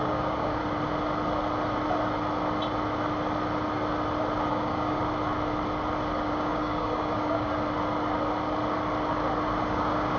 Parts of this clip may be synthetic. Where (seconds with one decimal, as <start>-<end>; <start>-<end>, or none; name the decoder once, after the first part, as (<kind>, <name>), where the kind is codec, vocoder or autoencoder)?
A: 0.0-0.6 (codec, DAC); 4.5-5.0; 6.3-7.5; 9.6-10.2